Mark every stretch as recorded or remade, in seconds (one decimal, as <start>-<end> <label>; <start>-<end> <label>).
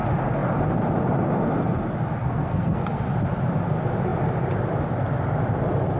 0.0-2.2 recorded; 2.2-3.0 remade; 3.0-6.0 recorded